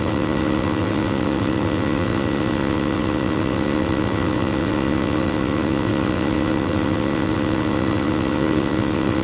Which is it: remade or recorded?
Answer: remade